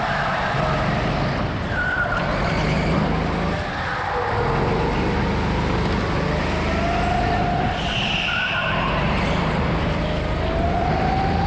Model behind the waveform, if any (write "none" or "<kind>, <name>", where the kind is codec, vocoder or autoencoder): none